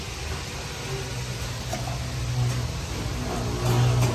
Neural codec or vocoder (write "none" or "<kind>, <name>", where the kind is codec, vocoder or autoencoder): none